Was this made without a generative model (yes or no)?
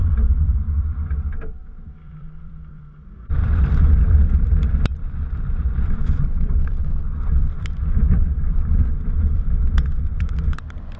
no